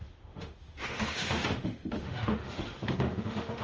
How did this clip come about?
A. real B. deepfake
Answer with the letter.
B